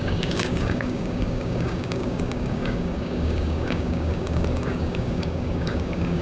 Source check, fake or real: fake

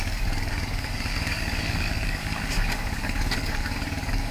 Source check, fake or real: fake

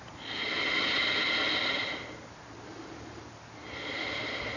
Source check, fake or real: real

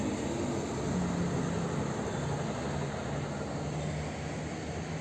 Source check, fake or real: real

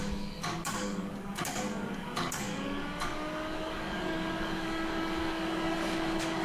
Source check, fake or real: fake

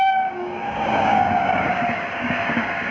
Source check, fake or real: fake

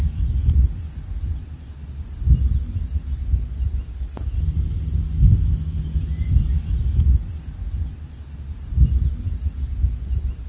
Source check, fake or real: real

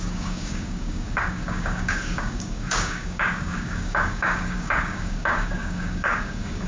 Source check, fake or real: fake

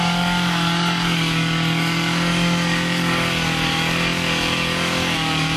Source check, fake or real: fake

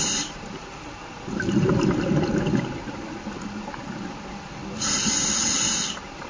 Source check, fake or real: real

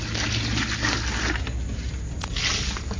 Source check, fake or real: real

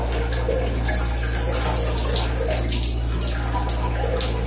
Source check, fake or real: real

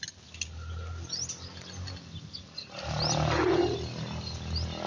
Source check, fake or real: real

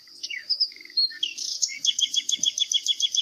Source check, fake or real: fake